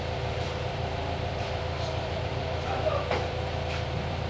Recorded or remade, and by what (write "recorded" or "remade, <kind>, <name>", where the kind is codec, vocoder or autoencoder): remade, vocoder, BigVGAN v2